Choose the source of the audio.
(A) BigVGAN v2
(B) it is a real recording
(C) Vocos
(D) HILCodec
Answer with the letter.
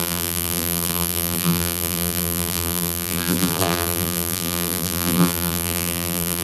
A